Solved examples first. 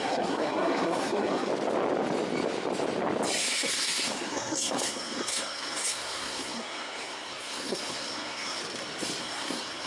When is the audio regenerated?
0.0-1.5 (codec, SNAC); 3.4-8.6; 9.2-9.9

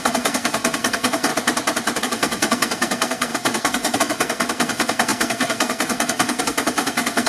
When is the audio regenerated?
0.0-1.3 (codec, SNAC); 2.0-7.3

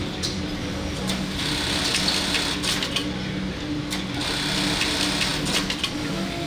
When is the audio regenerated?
none

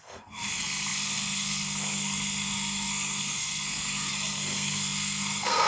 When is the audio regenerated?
0.0-5.7 (codec, SNAC)

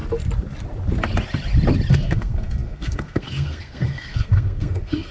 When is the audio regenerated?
1.9-5.1 (codec, SNAC)

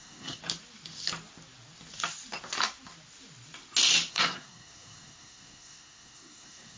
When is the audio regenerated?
0.0-0.4 (codec, SNAC); 4.1-6.8

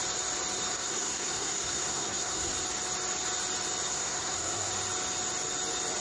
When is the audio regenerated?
0.7-2.5 (codec, SNAC); 3.9-4.7

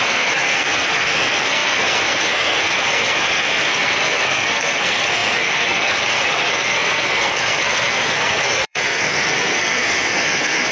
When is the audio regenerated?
0.0-10.7 (codec, SNAC)